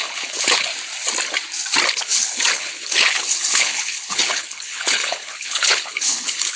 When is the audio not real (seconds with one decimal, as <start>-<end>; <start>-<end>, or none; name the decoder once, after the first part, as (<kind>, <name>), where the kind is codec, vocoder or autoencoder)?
0.0-0.7 (codec, HILCodec); 1.9-6.6